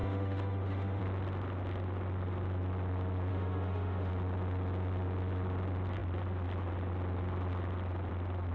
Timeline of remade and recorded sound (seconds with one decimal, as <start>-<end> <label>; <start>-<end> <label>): 0.0-1.0 remade; 1.0-3.3 recorded; 3.3-4.1 remade; 4.1-8.5 recorded